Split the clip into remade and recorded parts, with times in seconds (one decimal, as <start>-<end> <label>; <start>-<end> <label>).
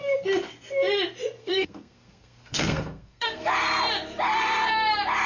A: 0.0-1.4 recorded; 1.4-3.5 remade; 3.5-5.3 recorded